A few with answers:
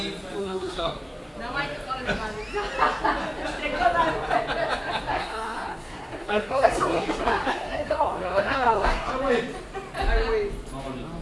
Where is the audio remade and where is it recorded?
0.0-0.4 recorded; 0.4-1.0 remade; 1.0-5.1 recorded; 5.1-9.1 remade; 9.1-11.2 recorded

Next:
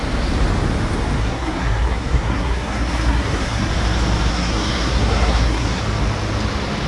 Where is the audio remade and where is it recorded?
0.0-1.2 recorded; 1.2-3.7 remade; 3.7-4.3 recorded; 4.3-5.8 remade; 5.8-6.9 recorded

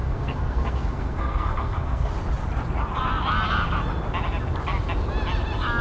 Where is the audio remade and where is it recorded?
0.0-2.1 remade; 2.1-5.8 recorded

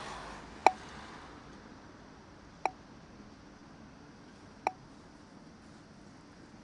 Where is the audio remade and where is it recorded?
0.0-6.6 recorded

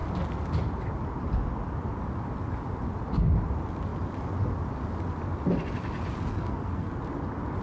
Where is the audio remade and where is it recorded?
0.0-6.3 recorded; 6.3-7.0 remade; 7.0-7.6 recorded

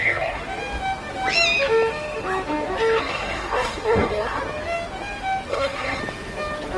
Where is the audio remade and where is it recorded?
0.0-0.4 remade; 0.4-3.0 recorded; 3.0-4.4 remade; 4.4-5.5 recorded; 5.5-6.0 remade; 6.0-6.8 recorded